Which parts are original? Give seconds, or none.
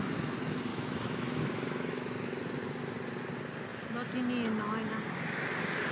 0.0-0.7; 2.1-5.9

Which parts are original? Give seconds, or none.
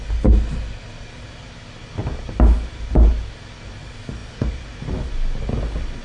0.0-6.0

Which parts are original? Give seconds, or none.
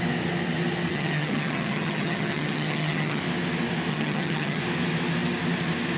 0.0-0.9; 3.2-3.9; 4.6-6.0